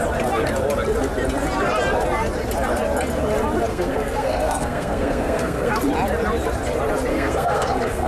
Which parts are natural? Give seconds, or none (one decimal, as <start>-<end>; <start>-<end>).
0.0-3.7; 5.8-7.1